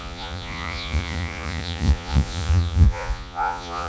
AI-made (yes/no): yes